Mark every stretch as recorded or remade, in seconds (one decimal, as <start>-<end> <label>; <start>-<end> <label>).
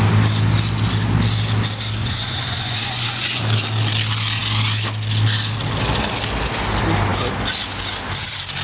0.0-2.0 recorded; 2.0-3.4 remade; 3.4-8.6 recorded